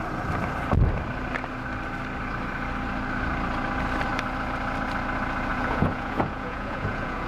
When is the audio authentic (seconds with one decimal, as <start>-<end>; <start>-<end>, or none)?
0.0-5.5